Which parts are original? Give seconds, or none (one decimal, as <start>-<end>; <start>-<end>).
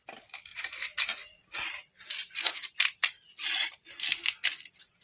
0.0-5.0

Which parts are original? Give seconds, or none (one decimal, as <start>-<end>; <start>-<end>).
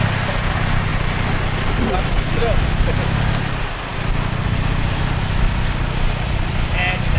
0.0-7.2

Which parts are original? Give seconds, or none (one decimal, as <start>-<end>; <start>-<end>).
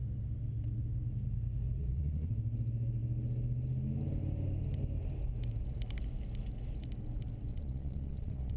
0.0-1.8; 2.3-7.5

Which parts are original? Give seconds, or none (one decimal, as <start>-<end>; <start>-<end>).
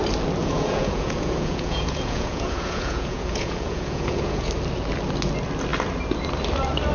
0.0-0.4; 4.5-6.9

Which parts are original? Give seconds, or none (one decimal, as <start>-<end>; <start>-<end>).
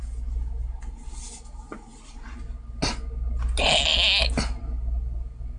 0.0-5.6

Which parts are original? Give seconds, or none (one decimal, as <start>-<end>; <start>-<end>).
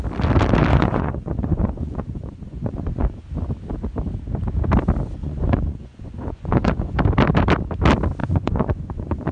0.0-0.7; 3.2-5.2; 7.0-8.2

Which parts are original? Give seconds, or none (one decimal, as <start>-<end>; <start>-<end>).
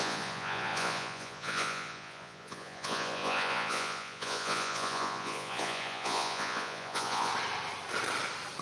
7.3-8.6